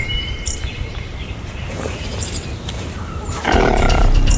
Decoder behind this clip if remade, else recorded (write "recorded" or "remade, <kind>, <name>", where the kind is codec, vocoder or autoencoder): remade, vocoder, BigVGAN v2